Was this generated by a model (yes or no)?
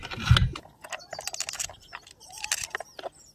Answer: no